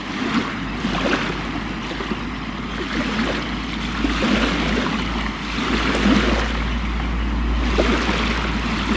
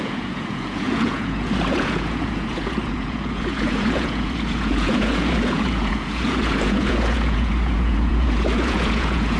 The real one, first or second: first